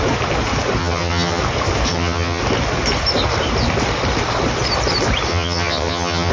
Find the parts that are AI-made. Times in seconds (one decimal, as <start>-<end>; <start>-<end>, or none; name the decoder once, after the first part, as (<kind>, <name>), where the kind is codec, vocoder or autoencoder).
0.8-1.4 (vocoder, HiFi-GAN); 1.9-2.4; 5.3-6.3